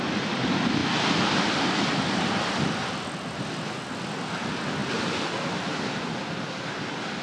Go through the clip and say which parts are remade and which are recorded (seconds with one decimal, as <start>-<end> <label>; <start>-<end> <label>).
0.0-7.2 recorded